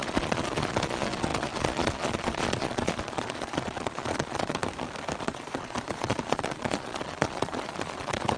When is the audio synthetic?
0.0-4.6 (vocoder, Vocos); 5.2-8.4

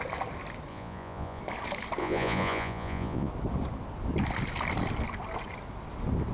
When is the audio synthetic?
0.7-1.4 (vocoder, Vocos); 2.0-3.3